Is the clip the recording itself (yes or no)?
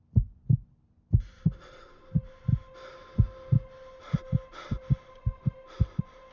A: yes